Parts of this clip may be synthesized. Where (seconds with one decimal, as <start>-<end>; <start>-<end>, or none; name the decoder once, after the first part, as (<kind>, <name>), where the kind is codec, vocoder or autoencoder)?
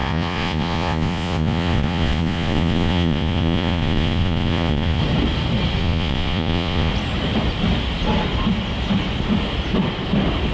0.0-5.0 (vocoder, Vocos); 5.8-6.9